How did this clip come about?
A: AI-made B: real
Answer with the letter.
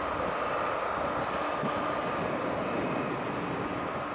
B